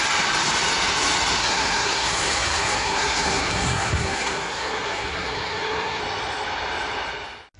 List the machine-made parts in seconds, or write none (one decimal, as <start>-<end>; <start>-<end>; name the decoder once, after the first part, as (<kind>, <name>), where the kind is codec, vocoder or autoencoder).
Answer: 1.4-6.0 (codec, SNAC)

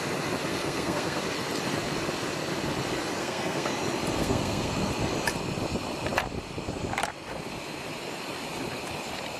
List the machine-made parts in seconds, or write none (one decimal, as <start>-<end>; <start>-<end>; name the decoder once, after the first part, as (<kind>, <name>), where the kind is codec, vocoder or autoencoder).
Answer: 0.5-1.2 (codec, SNAC); 3.2-3.7; 4.2-4.7

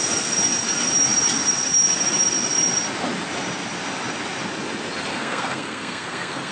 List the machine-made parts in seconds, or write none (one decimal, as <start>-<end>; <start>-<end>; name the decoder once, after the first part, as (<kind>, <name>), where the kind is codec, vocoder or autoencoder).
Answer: 5.1-6.5 (codec, SNAC)